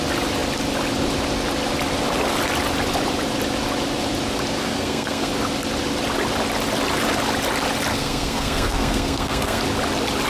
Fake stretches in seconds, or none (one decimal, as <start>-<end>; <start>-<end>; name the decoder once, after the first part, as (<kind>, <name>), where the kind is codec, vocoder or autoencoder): 4.6-5.3 (codec, SNAC); 7.9-9.6